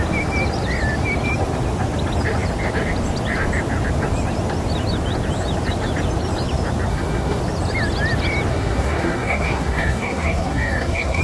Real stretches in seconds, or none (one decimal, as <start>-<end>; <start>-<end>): 0.0-6.9; 7.4-8.5